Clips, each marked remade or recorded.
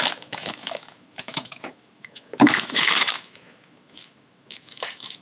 remade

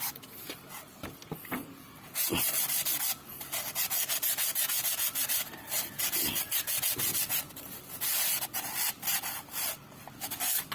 recorded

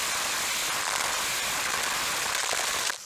recorded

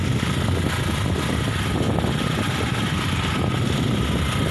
recorded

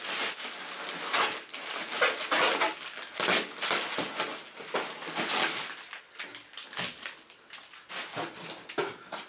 recorded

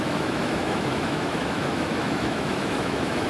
remade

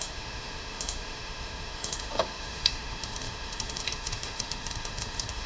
remade